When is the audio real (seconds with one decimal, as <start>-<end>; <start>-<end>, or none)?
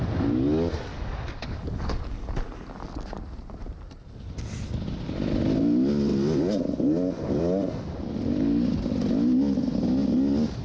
0.0-0.9; 2.3-10.6